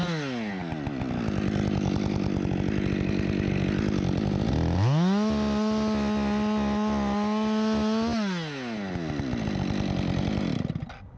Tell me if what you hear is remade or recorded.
recorded